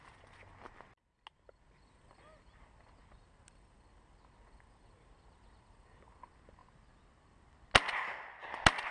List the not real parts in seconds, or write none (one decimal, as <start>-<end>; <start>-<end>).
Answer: none